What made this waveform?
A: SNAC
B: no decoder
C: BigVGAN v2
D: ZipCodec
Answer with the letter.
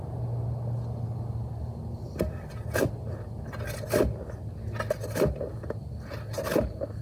B